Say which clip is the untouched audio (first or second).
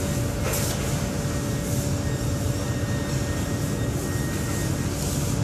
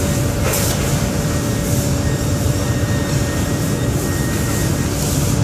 first